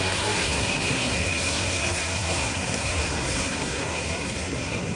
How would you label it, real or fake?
fake